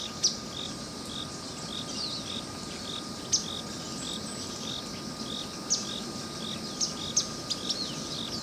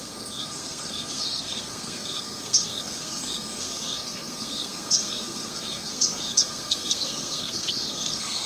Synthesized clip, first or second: second